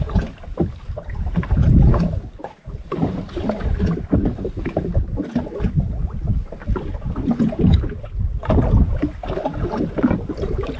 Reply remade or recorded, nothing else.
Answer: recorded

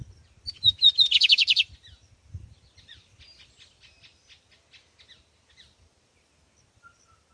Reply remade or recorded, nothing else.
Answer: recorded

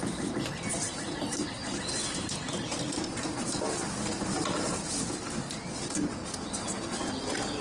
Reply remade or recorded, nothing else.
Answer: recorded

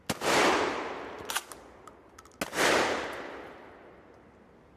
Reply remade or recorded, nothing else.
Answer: recorded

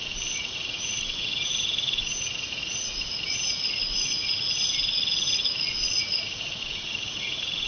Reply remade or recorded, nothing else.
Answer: remade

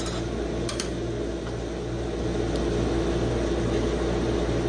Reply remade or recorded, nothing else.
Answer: recorded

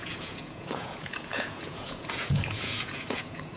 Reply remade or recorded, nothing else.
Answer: remade